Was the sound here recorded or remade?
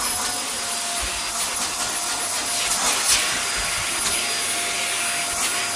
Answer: recorded